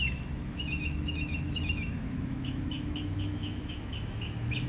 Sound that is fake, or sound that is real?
fake